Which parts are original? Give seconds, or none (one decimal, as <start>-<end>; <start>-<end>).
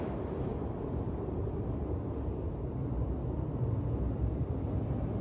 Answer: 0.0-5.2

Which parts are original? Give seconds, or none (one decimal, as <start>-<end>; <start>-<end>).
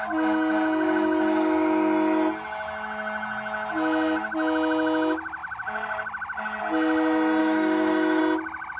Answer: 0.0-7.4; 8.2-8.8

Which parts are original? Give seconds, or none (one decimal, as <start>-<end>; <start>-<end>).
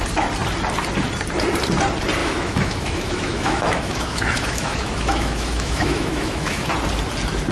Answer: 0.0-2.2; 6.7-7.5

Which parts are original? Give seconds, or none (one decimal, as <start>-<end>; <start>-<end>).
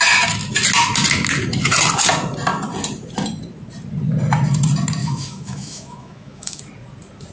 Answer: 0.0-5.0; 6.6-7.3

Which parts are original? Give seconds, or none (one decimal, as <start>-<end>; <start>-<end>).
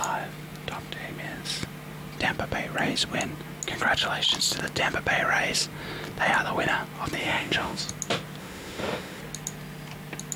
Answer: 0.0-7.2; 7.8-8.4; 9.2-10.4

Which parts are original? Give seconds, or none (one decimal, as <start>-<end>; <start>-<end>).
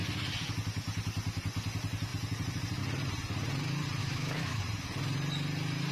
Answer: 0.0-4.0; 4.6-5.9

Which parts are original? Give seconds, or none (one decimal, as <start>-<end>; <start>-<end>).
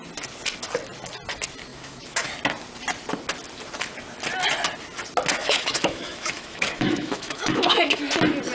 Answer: 0.0-1.7; 2.3-5.4; 8.0-8.5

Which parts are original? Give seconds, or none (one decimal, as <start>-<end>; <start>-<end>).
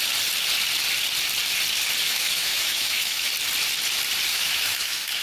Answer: 0.0-2.0; 3.3-4.3